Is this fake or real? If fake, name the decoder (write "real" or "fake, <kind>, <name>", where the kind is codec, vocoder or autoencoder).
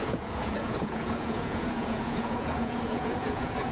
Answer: fake, vocoder, Vocos